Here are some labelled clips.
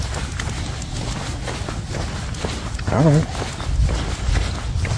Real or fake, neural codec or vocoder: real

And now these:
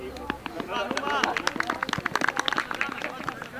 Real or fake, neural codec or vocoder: real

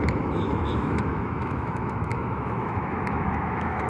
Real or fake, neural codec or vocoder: fake, autoencoder, DAC-VAE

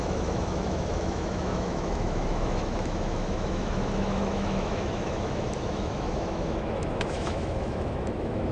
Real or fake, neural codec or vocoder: fake, autoencoder, DAC-VAE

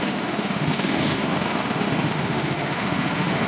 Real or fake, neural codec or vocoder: fake, autoencoder, DAC-VAE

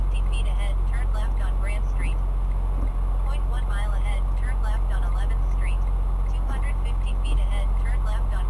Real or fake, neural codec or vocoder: real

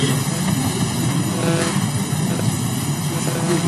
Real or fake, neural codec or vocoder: real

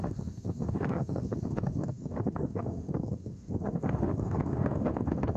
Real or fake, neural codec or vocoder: fake, autoencoder, DAC-VAE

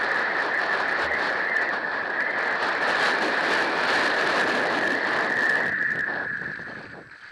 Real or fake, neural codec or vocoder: real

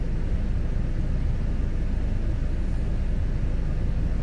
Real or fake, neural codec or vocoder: real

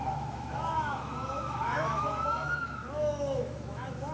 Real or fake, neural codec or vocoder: fake, autoencoder, DAC-VAE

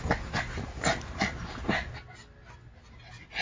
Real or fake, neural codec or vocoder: real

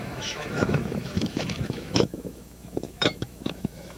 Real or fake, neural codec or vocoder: fake, autoencoder, DAC-VAE